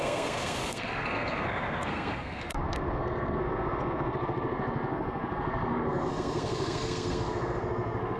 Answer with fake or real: fake